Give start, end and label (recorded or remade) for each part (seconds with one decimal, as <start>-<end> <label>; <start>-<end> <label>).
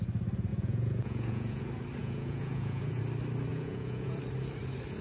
0.0-0.5 recorded; 0.5-1.6 remade; 1.6-2.0 recorded; 2.0-3.0 remade; 3.0-3.5 recorded; 3.5-4.2 remade; 4.2-5.0 recorded